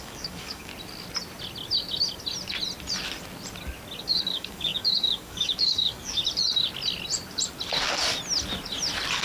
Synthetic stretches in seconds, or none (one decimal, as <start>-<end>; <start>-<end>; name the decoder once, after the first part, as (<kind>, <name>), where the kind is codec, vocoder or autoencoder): 0.0-0.7 (codec, DAC); 4.0-6.2